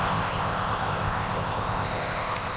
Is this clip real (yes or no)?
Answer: no